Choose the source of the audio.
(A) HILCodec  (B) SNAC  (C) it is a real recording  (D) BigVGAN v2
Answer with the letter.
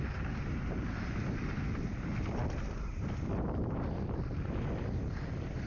C